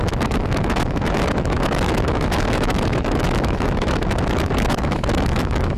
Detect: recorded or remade remade